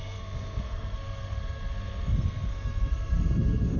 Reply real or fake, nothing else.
fake